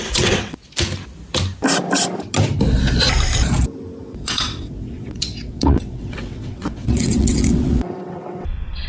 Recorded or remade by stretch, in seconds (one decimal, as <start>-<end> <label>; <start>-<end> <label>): 0.0-0.6 remade; 0.6-4.0 recorded; 4.0-8.9 remade